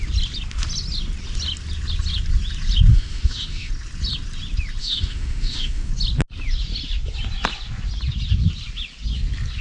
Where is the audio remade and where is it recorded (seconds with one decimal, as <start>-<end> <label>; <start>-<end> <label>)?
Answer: 0.0-2.9 recorded; 2.9-3.7 remade; 3.7-4.8 recorded; 4.8-5.9 remade; 5.9-9.6 recorded